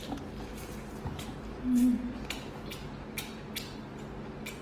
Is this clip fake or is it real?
real